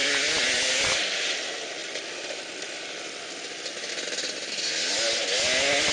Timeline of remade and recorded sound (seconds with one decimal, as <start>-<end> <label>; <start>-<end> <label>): 0.0-5.9 recorded